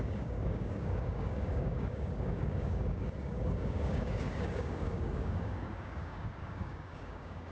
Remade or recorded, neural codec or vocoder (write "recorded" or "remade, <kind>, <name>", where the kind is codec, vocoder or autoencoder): remade, codec, DAC